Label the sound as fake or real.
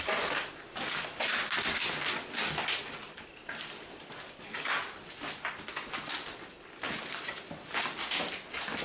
real